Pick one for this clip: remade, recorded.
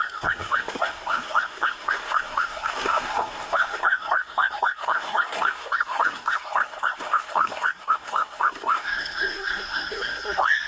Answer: remade